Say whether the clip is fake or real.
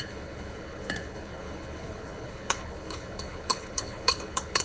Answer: fake